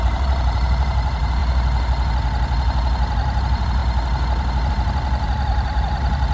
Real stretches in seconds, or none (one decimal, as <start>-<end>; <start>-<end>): 1.4-3.4; 3.8-4.7